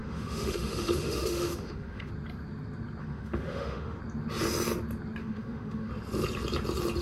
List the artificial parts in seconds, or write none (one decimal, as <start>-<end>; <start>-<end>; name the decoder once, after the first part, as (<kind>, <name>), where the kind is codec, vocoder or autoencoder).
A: 0.0-2.1 (autoencoder, DAC-VAE); 3.0-4.0; 5.2-5.9